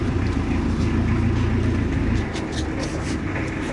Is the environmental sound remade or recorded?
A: recorded